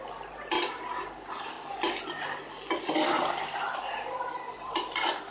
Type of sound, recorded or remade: remade